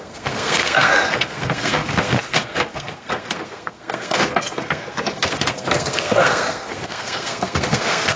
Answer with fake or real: fake